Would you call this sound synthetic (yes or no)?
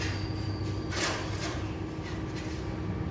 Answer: no